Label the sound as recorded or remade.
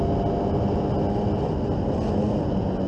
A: recorded